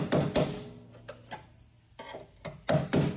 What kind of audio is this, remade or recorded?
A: recorded